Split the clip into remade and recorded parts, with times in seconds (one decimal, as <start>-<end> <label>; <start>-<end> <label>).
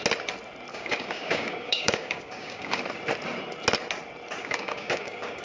0.0-0.7 recorded; 0.7-2.8 remade; 2.8-4.4 recorded; 4.4-5.4 remade